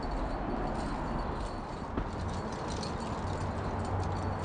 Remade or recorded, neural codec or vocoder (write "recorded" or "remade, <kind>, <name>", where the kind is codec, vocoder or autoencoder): recorded